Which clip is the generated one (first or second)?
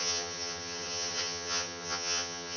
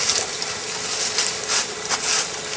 first